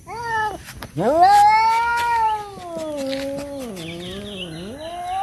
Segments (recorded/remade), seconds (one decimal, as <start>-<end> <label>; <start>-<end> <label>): 0.0-5.2 recorded